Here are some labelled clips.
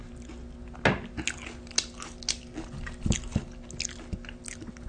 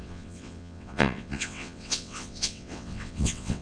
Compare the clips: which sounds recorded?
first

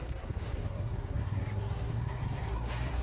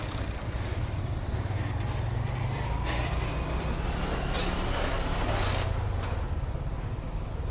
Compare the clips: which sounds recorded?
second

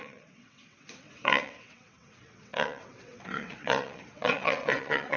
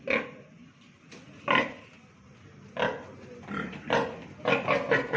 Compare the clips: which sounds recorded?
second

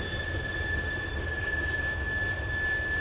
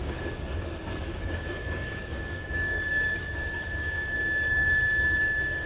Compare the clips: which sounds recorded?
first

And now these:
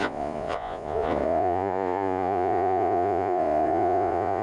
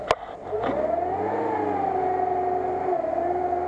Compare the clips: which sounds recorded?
second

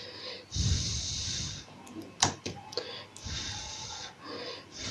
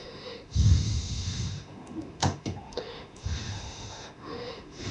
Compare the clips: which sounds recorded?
first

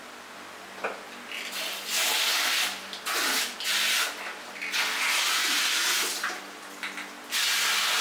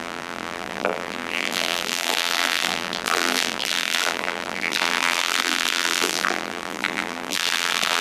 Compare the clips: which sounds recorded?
first